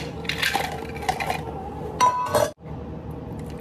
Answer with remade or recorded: recorded